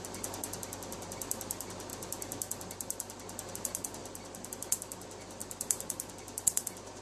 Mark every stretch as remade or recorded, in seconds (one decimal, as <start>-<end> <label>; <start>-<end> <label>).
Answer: 0.0-5.4 recorded; 5.4-6.1 remade; 6.1-7.0 recorded